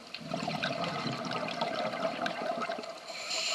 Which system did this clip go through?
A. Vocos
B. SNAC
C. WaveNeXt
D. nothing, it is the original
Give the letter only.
D